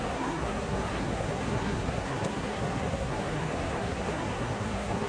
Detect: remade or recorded remade